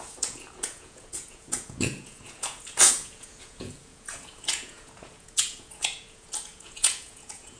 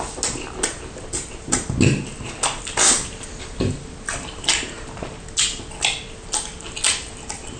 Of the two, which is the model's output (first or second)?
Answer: first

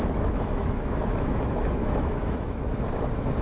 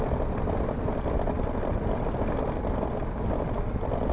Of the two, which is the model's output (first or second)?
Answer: first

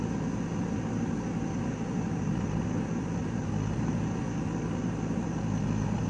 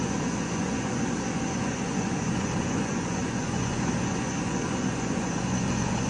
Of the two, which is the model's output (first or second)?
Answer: second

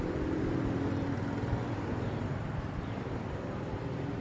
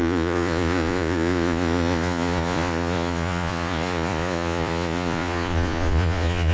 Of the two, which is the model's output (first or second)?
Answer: second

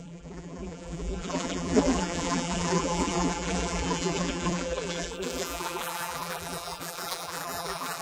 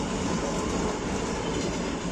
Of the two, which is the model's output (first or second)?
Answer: first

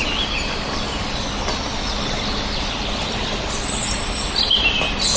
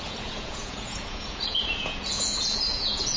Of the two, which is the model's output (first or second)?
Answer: second